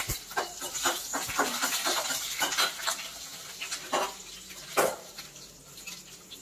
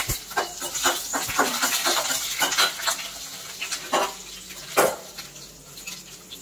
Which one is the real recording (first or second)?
second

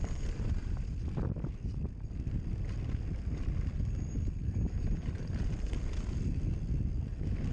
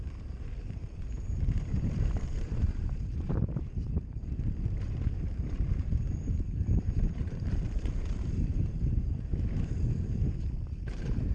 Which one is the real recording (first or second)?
first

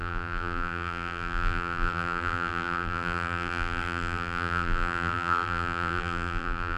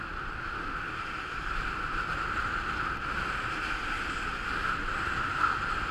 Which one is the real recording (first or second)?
second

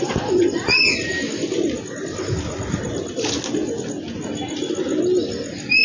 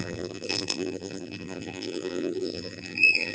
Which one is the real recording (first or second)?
first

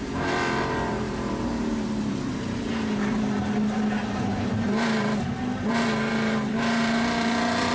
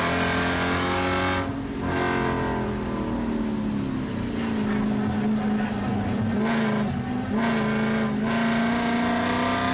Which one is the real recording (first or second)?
second